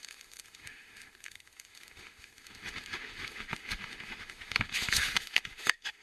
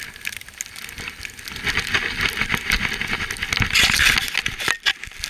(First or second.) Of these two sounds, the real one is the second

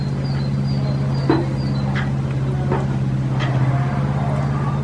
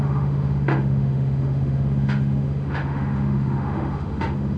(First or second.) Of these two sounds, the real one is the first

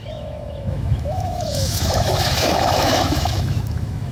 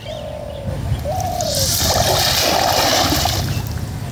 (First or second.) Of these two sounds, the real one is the second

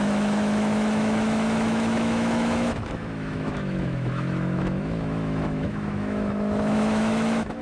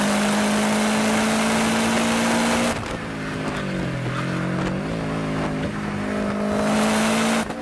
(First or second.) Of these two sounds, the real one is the second